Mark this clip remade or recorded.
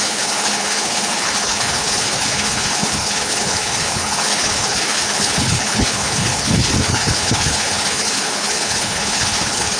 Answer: remade